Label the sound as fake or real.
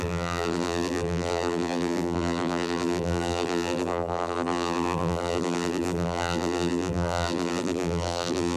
fake